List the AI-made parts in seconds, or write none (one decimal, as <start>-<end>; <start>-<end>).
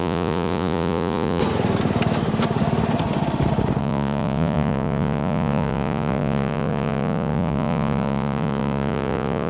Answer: 0.0-1.4; 3.8-9.5